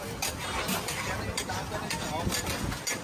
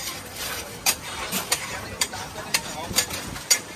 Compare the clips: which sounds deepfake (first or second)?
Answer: second